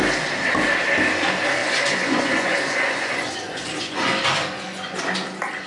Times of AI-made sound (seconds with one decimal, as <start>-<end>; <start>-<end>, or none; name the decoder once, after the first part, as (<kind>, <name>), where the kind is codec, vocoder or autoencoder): 1.6-5.0 (vocoder, Vocos)